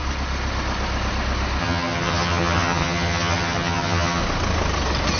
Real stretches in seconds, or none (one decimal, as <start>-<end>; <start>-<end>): 0.0-1.6; 4.2-5.2